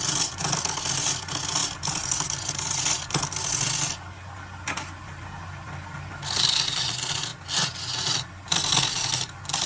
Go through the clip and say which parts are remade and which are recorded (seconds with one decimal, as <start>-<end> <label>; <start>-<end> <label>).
0.0-9.7 recorded